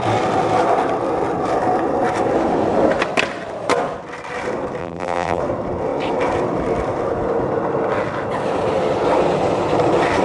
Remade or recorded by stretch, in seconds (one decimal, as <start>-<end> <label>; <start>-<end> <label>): 0.0-4.8 recorded; 4.8-5.4 remade; 5.4-10.2 recorded